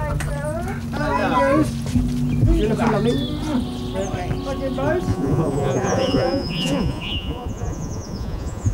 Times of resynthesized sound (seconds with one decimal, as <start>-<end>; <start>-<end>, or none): 5.1-8.7